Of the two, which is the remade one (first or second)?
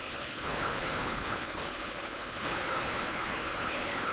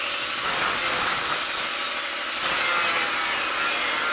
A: first